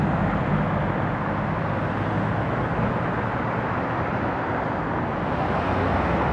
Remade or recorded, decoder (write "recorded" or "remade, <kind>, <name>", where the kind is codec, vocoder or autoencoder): recorded